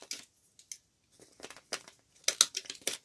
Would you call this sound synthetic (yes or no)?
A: no